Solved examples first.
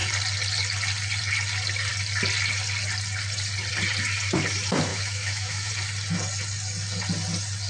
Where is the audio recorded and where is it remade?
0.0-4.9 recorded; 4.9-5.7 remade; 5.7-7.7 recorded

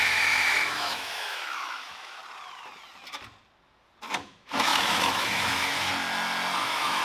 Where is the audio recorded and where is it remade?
0.0-2.2 remade; 2.2-4.2 recorded; 4.2-5.9 remade; 5.9-6.6 recorded; 6.6-7.0 remade

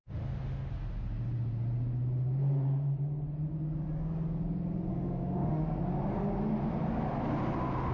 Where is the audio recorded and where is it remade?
0.0-0.7 remade; 0.7-4.9 recorded; 4.9-5.8 remade; 5.8-7.9 recorded

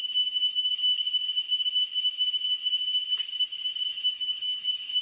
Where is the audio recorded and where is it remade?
0.0-0.9 remade; 0.9-3.9 recorded; 3.9-5.0 remade

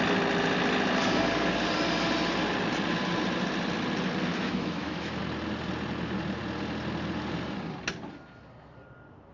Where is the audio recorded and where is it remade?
0.0-4.3 recorded; 4.3-5.2 remade; 5.2-9.3 recorded

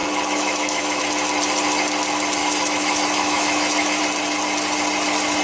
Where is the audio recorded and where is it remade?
0.0-1.0 remade; 1.0-2.4 recorded; 2.4-4.0 remade; 4.0-5.4 recorded

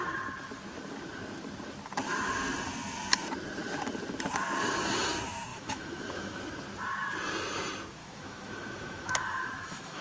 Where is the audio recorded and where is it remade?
0.0-5.5 recorded; 5.5-6.4 remade; 6.4-8.0 recorded; 8.0-10.0 remade

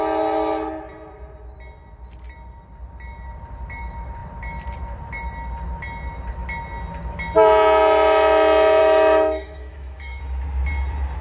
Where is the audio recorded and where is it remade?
0.0-8.8 recorded; 8.8-10.2 remade; 10.2-11.2 recorded